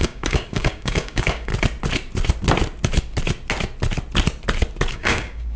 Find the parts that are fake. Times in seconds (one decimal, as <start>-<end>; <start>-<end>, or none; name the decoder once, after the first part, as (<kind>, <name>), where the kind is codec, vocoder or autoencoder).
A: 0.0-1.5 (codec, DAC); 4.9-5.6